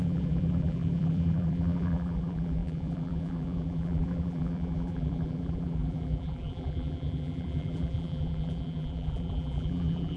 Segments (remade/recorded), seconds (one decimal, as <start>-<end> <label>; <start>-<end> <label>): 0.0-10.2 remade